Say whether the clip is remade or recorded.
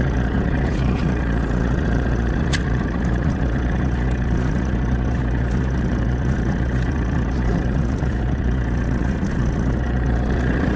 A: remade